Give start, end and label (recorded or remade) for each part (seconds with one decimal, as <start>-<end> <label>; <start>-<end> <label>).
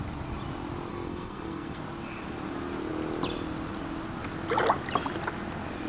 0.0-0.9 recorded; 0.9-1.8 remade; 1.8-5.9 recorded